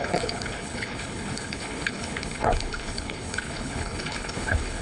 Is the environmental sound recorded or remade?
remade